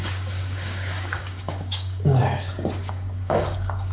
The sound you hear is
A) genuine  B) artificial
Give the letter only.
B